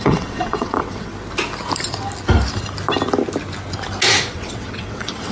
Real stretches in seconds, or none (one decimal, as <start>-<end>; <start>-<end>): 1.1-4.3